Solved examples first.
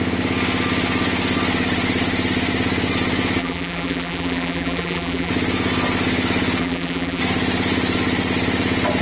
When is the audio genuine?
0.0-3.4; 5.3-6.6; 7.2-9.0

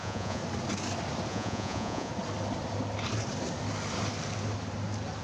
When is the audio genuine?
0.4-1.3; 2.1-5.2

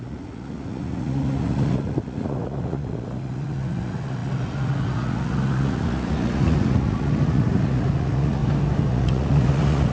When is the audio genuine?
8.4-8.9

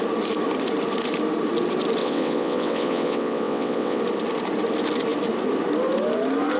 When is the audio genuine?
0.0-2.0; 4.0-6.6

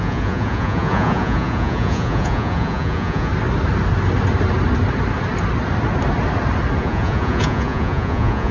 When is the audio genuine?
3.3-6.8

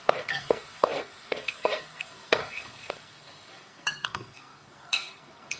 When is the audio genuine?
none

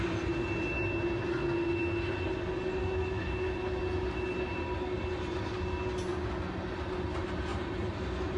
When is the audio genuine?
0.0-2.8; 3.8-8.4